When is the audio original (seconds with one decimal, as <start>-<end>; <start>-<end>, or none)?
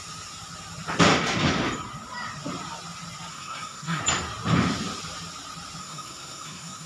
0.0-3.3; 4.0-5.8